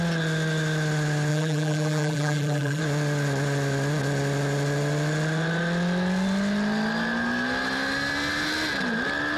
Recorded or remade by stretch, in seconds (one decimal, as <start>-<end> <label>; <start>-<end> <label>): 0.0-1.3 recorded; 1.3-2.8 remade; 2.8-9.4 recorded